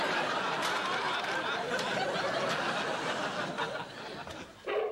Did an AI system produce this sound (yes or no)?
no